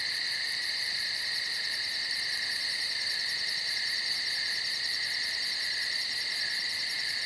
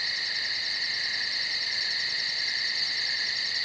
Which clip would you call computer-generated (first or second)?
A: first